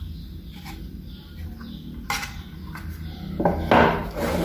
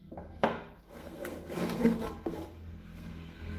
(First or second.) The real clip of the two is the first